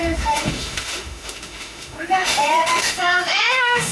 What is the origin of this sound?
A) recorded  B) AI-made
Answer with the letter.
B